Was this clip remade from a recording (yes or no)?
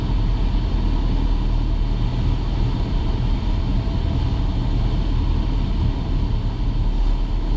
no